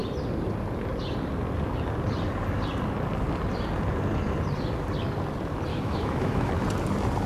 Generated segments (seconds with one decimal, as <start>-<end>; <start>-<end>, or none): 5.7-6.5